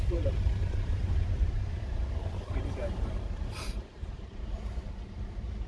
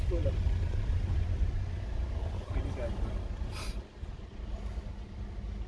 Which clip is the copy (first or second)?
first